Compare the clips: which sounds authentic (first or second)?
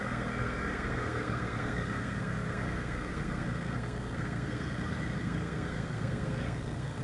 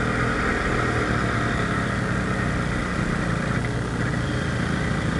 second